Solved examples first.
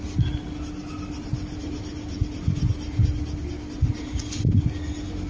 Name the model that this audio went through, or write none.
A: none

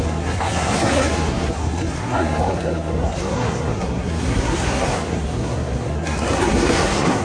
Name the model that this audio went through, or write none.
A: codec, SNAC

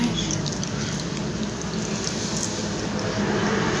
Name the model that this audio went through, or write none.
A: none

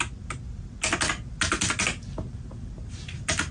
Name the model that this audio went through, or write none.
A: none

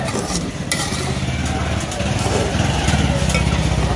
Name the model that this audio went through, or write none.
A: none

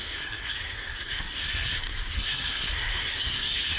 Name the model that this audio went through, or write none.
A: codec, SNAC